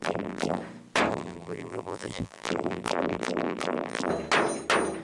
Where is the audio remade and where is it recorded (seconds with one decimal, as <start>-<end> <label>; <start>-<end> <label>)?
0.0-0.6 remade; 0.6-1.1 recorded; 1.1-4.1 remade; 4.1-5.0 recorded